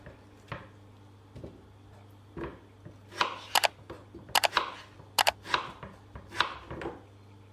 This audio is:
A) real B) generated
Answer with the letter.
A